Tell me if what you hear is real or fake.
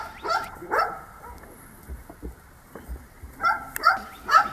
real